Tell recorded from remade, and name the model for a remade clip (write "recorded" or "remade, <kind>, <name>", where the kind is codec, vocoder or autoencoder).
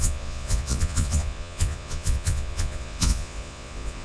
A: remade, vocoder, Vocos